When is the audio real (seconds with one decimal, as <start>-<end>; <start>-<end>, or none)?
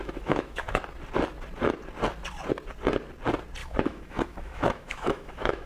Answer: 0.8-3.6